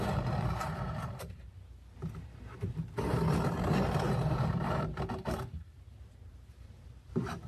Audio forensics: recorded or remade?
remade